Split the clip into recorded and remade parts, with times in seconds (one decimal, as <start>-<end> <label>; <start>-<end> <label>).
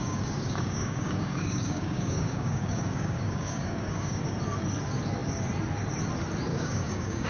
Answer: 0.0-4.2 remade; 4.2-6.5 recorded; 6.5-7.3 remade